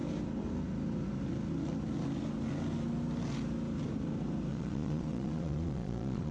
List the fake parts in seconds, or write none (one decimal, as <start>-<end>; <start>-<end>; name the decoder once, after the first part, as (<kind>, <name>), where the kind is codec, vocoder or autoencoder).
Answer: 4.5-6.3 (vocoder, Vocos)